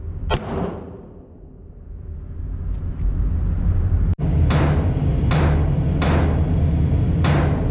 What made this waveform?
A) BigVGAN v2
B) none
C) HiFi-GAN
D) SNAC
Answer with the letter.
B